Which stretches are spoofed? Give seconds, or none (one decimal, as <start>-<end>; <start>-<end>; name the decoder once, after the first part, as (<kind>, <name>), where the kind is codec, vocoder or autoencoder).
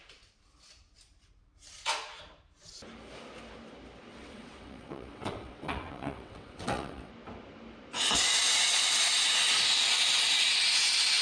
4.1-7.1 (vocoder, WaveNeXt)